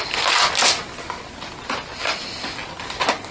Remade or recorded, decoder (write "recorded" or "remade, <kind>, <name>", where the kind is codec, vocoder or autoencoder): recorded